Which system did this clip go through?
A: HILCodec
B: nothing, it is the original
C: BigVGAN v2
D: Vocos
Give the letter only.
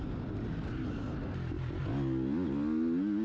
B